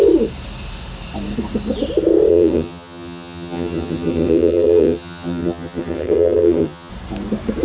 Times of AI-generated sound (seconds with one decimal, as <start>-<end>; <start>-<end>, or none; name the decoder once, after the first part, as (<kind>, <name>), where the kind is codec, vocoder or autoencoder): 2.3-6.9 (vocoder, HiFi-GAN)

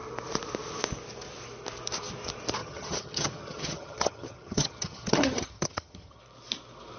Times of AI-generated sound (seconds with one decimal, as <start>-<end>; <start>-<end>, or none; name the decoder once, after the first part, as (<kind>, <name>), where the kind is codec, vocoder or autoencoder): 2.6-6.2 (vocoder, HiFi-GAN)

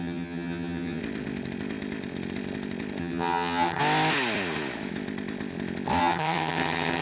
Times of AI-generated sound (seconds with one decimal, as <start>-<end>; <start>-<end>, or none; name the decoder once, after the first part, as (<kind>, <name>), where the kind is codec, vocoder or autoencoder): 0.0-1.0 (vocoder, HiFi-GAN); 3.0-3.8; 6.0-7.0